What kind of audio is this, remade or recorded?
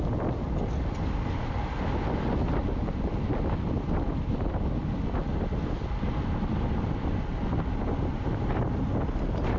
recorded